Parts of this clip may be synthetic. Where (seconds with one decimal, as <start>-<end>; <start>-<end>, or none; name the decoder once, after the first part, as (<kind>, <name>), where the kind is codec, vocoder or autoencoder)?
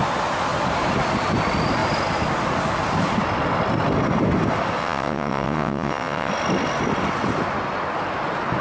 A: 4.8-6.3 (vocoder, WaveNeXt)